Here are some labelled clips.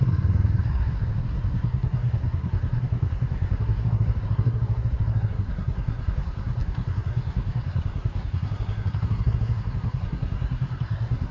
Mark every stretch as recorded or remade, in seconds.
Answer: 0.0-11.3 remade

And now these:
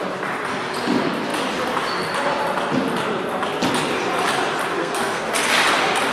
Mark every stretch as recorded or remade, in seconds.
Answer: 0.0-4.8 recorded; 4.8-5.3 remade; 5.3-6.1 recorded

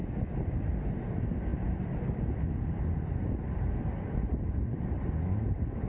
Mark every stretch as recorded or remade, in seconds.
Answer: 0.0-5.9 recorded

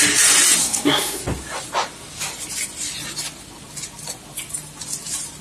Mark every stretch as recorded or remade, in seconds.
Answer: 0.0-0.6 recorded; 0.6-1.2 remade; 1.2-5.4 recorded

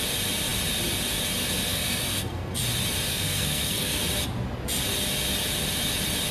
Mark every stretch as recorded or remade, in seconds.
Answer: 0.0-1.7 recorded; 1.7-2.6 remade; 2.6-3.1 recorded; 3.1-4.0 remade; 4.0-6.3 recorded

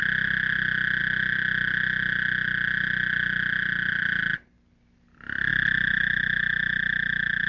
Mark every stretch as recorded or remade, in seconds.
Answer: 0.0-7.5 recorded

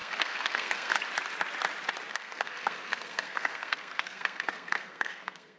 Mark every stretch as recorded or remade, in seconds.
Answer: 0.0-1.0 remade; 1.0-2.1 recorded; 2.1-5.6 remade